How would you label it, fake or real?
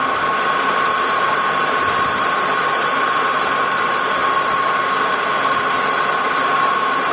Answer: real